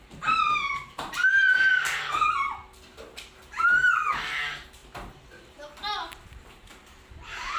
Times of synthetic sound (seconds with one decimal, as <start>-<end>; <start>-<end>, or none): 0.0-1.2; 3.3-4.8; 5.3-7.6